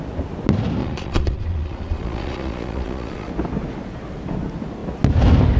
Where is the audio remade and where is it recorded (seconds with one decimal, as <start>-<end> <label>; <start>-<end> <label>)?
0.0-0.8 recorded; 0.8-3.3 remade; 3.3-5.6 recorded